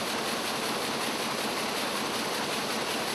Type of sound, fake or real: real